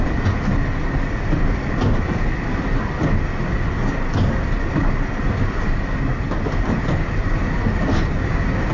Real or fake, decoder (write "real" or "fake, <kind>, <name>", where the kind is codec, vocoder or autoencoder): real